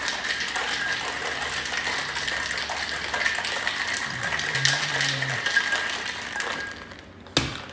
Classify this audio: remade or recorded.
recorded